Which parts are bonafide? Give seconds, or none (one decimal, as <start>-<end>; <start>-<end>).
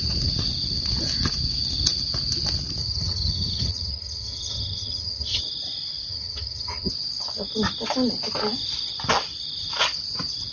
0.0-2.8; 5.4-6.1; 6.9-10.5